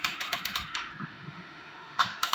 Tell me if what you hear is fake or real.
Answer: fake